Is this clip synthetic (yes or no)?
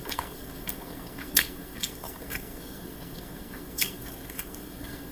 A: yes